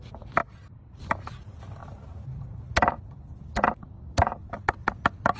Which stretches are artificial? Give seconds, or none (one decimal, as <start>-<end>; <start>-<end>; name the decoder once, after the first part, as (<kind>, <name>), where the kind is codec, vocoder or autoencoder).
none